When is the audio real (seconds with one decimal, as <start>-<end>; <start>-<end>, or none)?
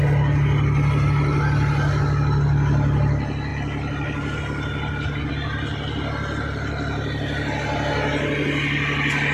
0.0-9.3